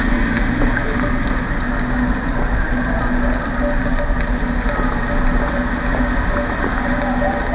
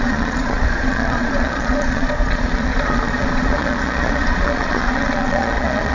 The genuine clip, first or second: first